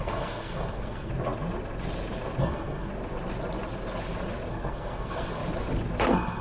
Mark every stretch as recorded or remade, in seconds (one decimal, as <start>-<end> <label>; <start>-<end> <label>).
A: 0.0-1.1 remade; 1.1-2.4 recorded; 2.4-2.9 remade; 2.9-4.5 recorded; 4.5-5.4 remade; 5.4-6.0 recorded; 6.0-6.4 remade